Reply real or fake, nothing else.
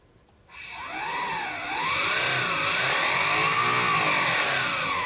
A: real